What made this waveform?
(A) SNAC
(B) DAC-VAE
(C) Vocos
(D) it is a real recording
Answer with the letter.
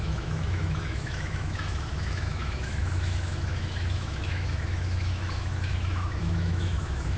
B